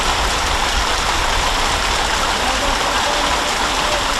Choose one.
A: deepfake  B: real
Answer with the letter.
B